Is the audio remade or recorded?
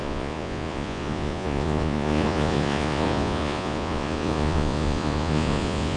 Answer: remade